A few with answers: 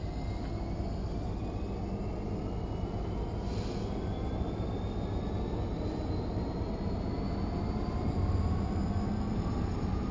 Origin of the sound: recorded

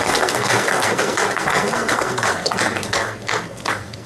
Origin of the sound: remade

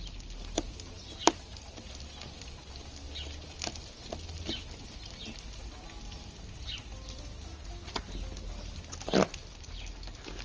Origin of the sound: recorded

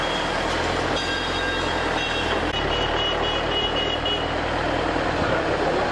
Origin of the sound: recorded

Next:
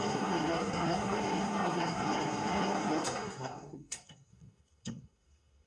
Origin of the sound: remade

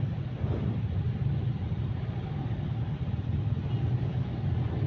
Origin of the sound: recorded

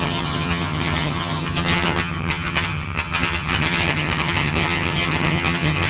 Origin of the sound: remade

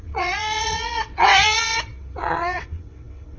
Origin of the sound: remade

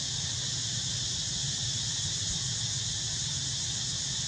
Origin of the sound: recorded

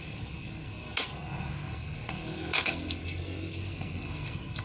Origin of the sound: remade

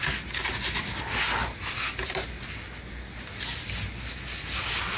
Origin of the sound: recorded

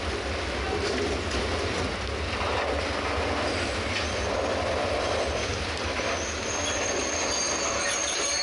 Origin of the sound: recorded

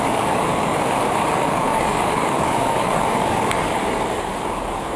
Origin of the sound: remade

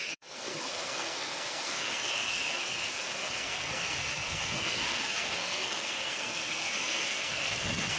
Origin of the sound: remade